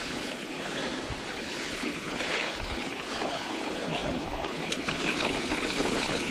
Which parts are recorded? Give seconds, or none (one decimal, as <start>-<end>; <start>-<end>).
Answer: 0.8-1.3